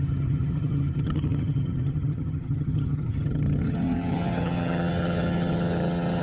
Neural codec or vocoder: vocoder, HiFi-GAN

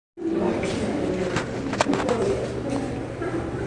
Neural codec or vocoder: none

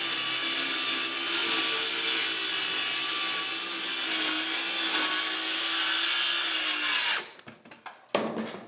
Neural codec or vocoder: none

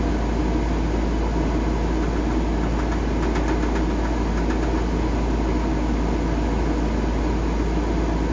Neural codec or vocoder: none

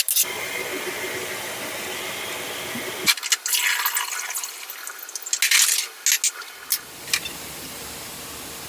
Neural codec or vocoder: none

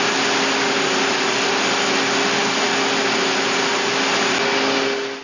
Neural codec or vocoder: none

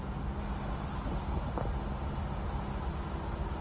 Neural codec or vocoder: none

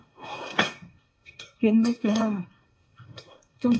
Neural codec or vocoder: codec, SNAC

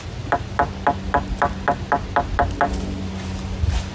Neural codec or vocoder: none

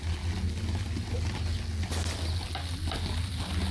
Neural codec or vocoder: none